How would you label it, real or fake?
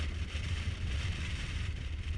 fake